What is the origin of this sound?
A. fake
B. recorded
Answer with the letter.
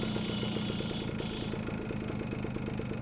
B